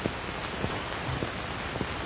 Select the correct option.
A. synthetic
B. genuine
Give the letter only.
B